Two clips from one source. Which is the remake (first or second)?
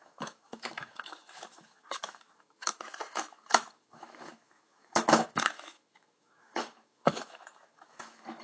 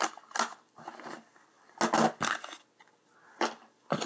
first